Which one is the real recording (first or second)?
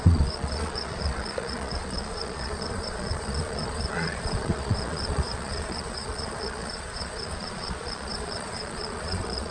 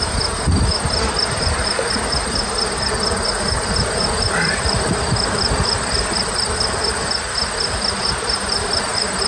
second